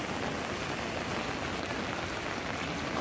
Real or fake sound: real